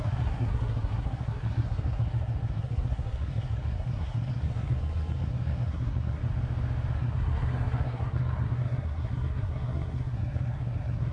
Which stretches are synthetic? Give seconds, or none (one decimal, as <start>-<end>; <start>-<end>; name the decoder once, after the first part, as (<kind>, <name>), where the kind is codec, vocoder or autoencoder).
0.0-6.2 (codec, SNAC); 6.9-11.1